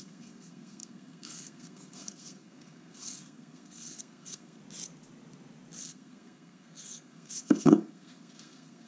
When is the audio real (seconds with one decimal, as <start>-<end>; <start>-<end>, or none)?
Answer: 4.6-5.8